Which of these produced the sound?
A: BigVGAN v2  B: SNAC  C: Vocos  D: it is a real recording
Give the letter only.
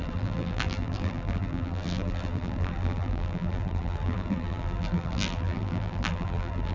A